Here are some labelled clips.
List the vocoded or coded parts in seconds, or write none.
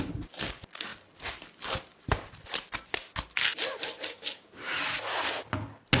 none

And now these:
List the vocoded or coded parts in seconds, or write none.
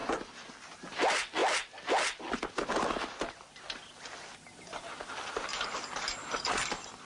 5.5-7.0 (vocoder, BigVGAN v2)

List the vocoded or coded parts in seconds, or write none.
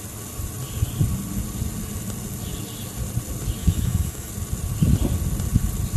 3.6-4.3 (autoencoder, DAC-VAE)